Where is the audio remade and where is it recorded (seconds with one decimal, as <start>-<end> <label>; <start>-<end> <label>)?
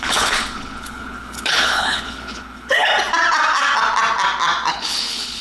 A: 0.0-2.9 remade; 2.9-4.7 recorded; 4.7-5.4 remade